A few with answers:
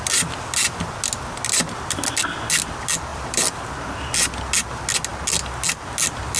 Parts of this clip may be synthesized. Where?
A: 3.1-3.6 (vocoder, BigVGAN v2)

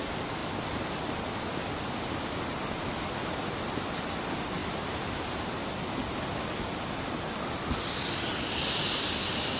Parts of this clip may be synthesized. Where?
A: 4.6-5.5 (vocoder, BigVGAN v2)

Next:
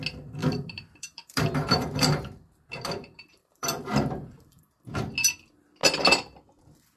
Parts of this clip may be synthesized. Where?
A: 0.4-4.6 (vocoder, BigVGAN v2)

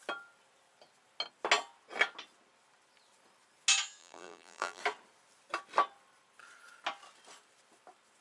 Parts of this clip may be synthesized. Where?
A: 4.0-4.8 (vocoder, BigVGAN v2)